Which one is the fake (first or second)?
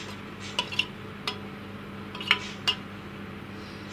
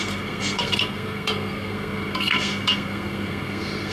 second